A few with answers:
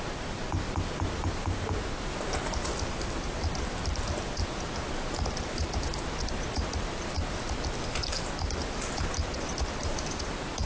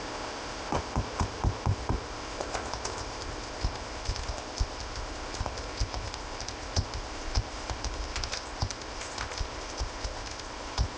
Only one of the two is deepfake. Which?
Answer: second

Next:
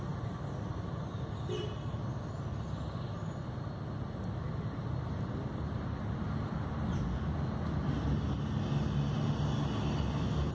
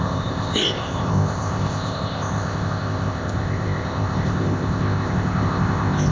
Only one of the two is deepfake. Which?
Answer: second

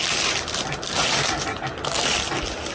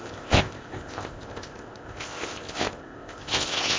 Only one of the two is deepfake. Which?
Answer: second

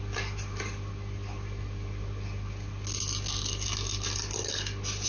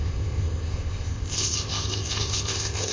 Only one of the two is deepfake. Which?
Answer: second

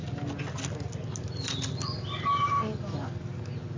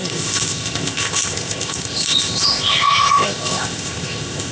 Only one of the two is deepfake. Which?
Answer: second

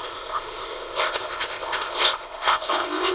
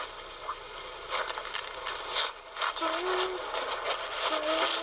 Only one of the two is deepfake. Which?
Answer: first